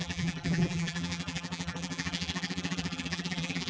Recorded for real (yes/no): no